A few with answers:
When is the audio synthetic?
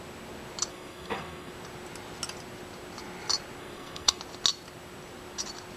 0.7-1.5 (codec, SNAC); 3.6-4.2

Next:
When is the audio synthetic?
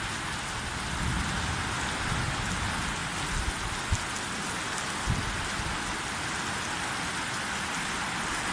none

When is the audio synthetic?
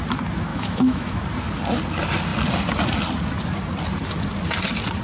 0.5-1.2 (autoencoder, DAC-VAE)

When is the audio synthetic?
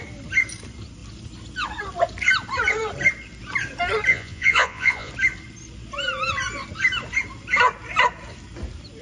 4.1-5.1 (vocoder, Vocos)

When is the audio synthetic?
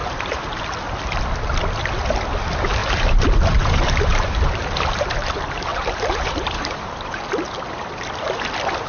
0.0-0.6 (vocoder, BigVGAN v2); 2.8-4.6; 5.7-7.2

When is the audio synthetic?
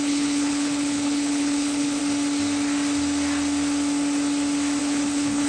0.0-2.0 (codec, HILCodec); 4.8-5.5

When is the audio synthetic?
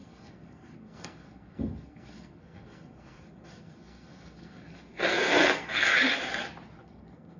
0.0-5.9 (codec, SNAC); 6.8-7.4